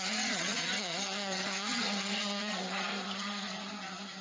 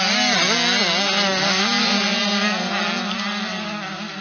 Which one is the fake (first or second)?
first